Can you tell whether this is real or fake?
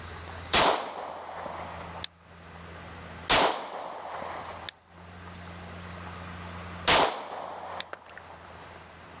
real